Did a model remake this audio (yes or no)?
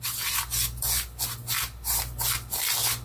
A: no